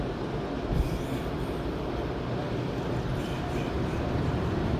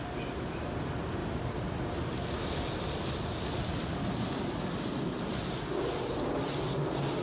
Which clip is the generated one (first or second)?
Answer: first